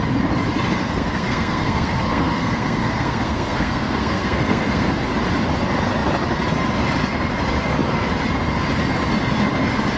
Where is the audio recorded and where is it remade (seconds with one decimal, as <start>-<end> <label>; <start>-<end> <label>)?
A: 0.0-0.8 recorded; 0.8-5.1 remade; 5.1-10.0 recorded